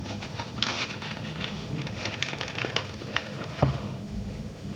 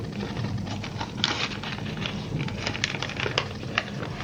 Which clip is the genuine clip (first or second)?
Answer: second